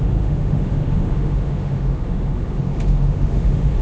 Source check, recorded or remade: remade